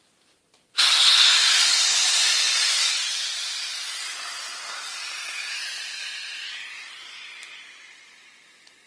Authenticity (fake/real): real